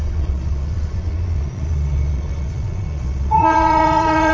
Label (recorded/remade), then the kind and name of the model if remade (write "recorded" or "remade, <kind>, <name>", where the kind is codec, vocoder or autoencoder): remade, vocoder, Vocos